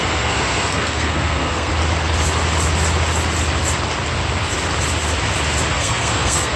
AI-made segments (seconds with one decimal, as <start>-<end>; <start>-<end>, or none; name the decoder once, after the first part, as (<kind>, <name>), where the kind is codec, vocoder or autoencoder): 0.0-1.7 (codec, SNAC); 5.7-6.6